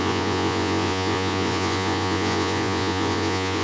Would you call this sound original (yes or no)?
no